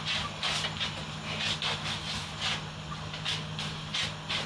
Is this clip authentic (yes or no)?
yes